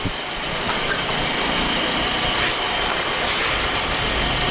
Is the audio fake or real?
real